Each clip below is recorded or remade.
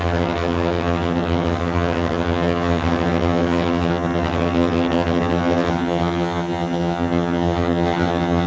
remade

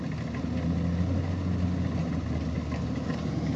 recorded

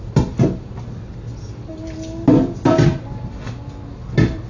recorded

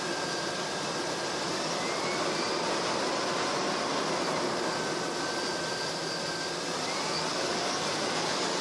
recorded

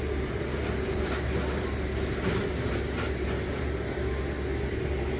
recorded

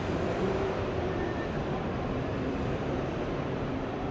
remade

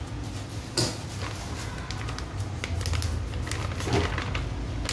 recorded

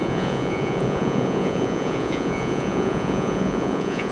remade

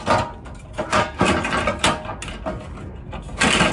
recorded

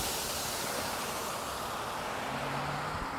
recorded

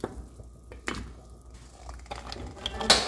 recorded